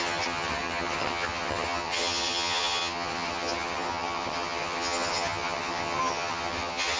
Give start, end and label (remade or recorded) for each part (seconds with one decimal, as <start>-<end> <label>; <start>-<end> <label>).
0.0-7.0 remade